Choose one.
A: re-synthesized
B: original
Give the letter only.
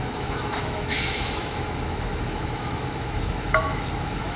A